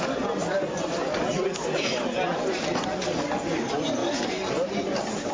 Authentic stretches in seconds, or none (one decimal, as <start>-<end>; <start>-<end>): 0.0-5.3